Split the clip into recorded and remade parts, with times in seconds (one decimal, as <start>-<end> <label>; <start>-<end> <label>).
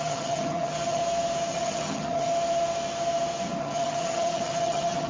0.0-1.0 remade; 1.0-1.5 recorded; 1.5-2.3 remade; 2.3-3.6 recorded; 3.6-5.1 remade